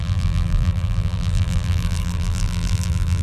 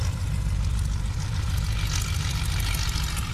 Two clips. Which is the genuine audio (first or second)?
second